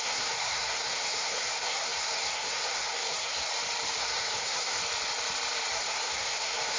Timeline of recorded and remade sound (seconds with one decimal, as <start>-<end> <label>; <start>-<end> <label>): 0.0-3.5 remade; 3.5-4.0 recorded; 4.0-4.8 remade; 4.8-5.7 recorded; 5.7-6.8 remade